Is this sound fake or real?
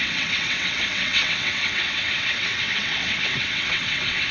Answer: fake